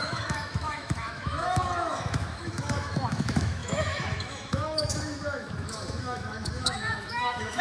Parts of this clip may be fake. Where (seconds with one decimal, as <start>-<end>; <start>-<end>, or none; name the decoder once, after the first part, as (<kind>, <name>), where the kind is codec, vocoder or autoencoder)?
0.0-7.6 (autoencoder, DAC-VAE)